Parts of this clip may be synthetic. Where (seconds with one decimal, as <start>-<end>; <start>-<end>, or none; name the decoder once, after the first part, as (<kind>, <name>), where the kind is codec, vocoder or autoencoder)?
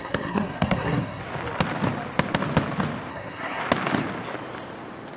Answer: 0.0-1.2 (codec, SNAC); 3.1-3.6